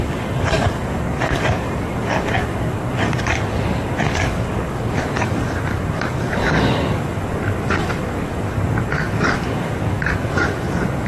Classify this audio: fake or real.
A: fake